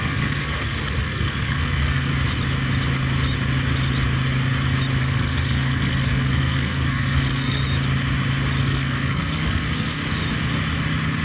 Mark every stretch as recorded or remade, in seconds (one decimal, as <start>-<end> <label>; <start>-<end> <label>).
0.0-2.1 remade; 2.1-5.0 recorded; 5.0-7.6 remade; 7.6-8.6 recorded; 8.6-10.0 remade; 10.0-11.2 recorded